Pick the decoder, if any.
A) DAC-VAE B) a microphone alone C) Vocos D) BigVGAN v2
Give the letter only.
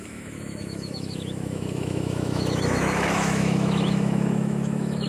A